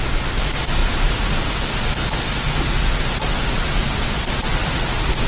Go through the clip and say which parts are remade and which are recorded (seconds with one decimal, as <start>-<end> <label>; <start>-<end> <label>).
0.0-5.3 recorded